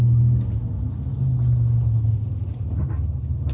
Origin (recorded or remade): recorded